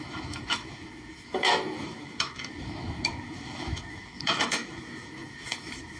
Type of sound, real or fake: fake